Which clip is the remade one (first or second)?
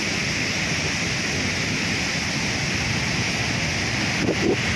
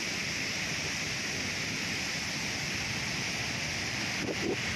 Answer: second